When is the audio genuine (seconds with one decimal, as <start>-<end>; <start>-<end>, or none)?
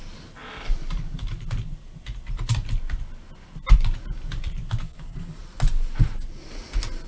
0.0-4.8; 5.4-7.1